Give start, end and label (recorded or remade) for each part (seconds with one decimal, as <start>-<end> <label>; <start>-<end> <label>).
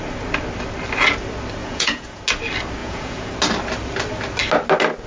0.0-1.6 recorded; 1.6-2.2 remade; 2.2-2.8 recorded; 2.8-3.3 remade; 3.3-5.1 recorded